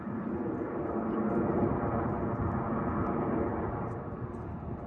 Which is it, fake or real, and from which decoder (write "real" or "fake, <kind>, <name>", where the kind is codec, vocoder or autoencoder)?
real